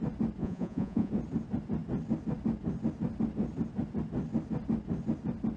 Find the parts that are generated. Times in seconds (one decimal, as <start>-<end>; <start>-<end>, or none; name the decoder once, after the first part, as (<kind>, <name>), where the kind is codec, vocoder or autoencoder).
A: 0.4-1.1 (vocoder, Vocos)